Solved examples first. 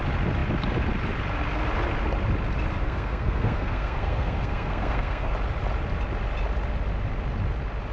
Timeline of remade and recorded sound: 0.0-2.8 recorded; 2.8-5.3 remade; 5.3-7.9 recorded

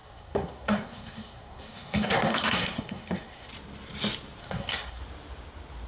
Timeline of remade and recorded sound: 0.0-3.5 remade; 3.5-4.4 recorded; 4.4-5.0 remade; 5.0-5.9 recorded

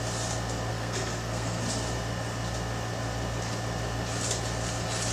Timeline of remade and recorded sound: 0.0-0.7 recorded; 0.7-1.6 remade; 1.6-5.1 recorded

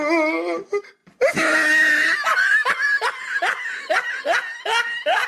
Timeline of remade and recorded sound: 0.0-5.3 recorded